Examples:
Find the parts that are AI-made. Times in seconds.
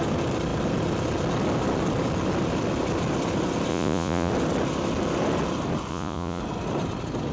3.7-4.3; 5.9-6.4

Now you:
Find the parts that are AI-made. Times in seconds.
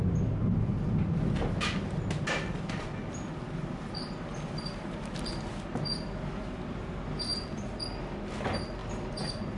4.3-5.3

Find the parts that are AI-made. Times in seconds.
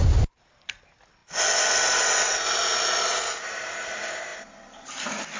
none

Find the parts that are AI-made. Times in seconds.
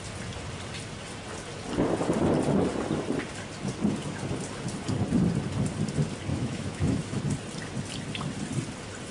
6.3-7.2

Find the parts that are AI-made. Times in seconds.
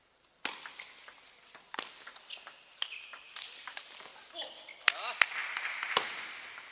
4.1-4.6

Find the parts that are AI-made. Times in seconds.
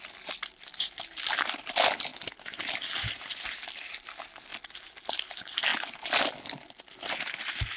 none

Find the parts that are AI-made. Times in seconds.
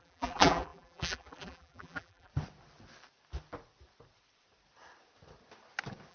0.0-2.3